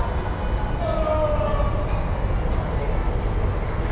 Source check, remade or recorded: recorded